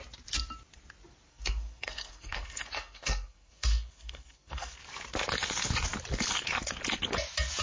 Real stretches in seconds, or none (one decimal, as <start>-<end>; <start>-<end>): 0.0-1.3; 4.8-7.6